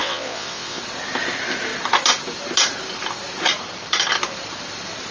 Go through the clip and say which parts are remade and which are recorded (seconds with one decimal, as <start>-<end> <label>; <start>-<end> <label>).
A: 0.0-0.8 remade; 0.8-5.1 recorded